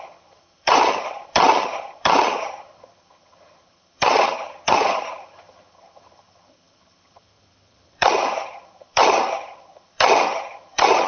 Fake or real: fake